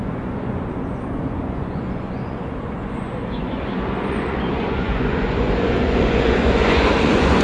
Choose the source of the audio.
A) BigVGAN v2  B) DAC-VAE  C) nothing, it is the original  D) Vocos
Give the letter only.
D